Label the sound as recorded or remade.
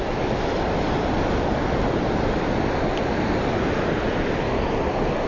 recorded